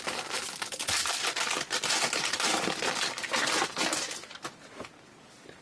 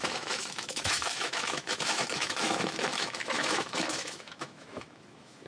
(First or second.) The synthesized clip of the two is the second